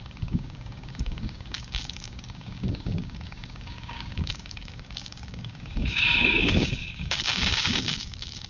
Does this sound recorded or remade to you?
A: remade